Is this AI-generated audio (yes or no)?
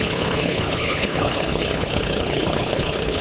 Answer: yes